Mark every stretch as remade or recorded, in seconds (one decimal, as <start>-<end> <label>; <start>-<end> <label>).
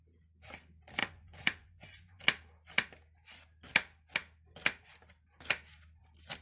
0.0-1.0 recorded; 1.0-2.2 remade; 2.2-6.4 recorded